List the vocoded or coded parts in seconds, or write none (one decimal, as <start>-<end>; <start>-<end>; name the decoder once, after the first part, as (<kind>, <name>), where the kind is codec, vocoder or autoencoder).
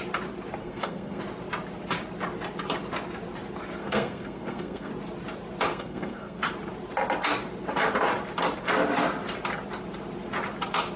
0.6-1.2 (codec, SNAC); 3.8-4.9; 5.7-6.4